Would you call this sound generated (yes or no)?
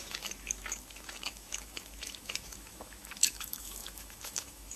yes